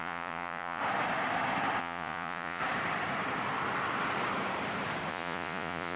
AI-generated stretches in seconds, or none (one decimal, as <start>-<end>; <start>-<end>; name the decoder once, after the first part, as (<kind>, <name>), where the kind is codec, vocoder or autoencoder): 0.0-0.8 (vocoder, Vocos); 1.8-2.6; 5.1-6.0